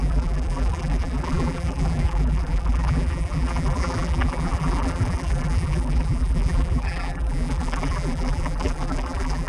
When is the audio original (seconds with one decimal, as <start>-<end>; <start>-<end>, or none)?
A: none